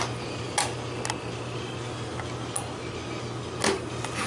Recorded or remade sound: recorded